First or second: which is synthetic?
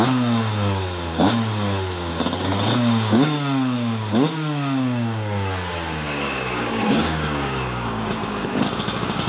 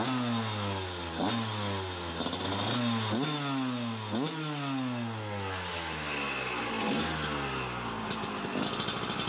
first